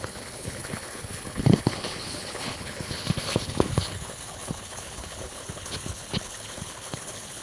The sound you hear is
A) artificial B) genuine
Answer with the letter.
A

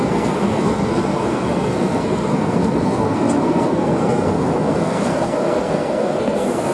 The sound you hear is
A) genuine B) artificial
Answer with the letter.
B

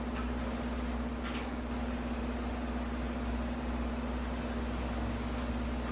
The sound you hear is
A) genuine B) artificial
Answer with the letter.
A